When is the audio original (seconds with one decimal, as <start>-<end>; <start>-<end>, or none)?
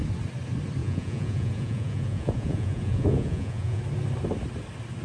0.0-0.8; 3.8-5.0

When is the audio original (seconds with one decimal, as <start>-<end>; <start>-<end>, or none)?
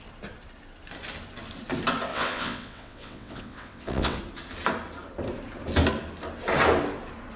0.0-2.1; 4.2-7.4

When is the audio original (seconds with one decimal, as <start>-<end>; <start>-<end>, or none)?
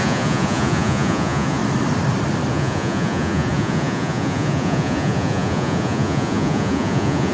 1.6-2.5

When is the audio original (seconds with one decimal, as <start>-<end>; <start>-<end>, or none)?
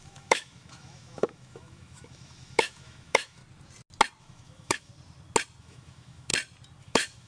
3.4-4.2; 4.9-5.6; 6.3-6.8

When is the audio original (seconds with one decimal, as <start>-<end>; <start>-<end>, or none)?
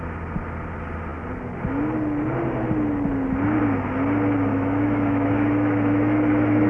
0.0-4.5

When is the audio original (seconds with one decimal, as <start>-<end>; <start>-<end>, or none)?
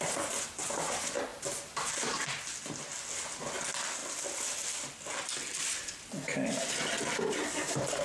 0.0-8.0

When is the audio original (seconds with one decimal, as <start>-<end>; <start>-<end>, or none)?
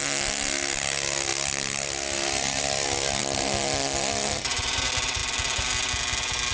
0.0-6.5